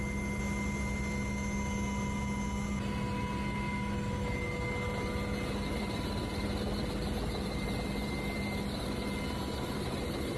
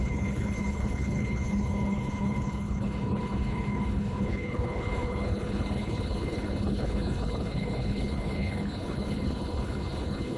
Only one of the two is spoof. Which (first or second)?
second